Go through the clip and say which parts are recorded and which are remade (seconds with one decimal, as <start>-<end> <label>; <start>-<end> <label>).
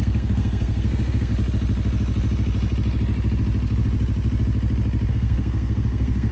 0.0-1.3 remade; 1.3-5.1 recorded; 5.1-6.3 remade